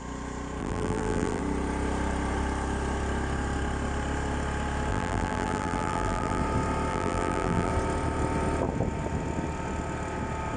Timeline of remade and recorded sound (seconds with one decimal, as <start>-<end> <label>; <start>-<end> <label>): 0.0-0.6 recorded; 0.6-1.4 remade; 1.4-4.9 recorded; 4.9-6.4 remade; 6.4-6.9 recorded; 6.9-7.7 remade; 7.7-10.6 recorded